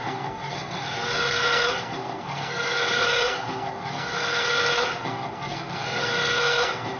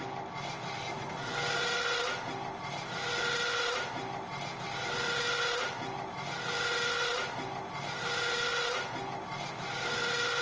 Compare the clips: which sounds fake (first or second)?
first